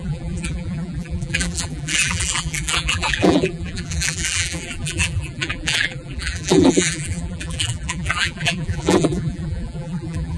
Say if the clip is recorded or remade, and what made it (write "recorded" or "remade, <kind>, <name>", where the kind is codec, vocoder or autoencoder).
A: remade, vocoder, BigVGAN v2